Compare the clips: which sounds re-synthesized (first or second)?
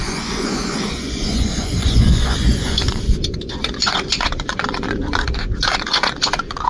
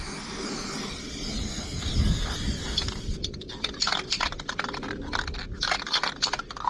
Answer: first